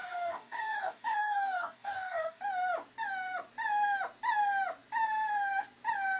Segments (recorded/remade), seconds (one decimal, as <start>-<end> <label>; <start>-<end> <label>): 0.0-2.4 remade; 2.4-6.2 recorded